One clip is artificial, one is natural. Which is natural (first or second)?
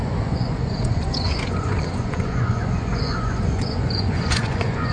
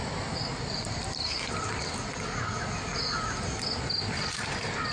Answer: second